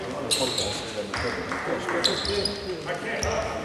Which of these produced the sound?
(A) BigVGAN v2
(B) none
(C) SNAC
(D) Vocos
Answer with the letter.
B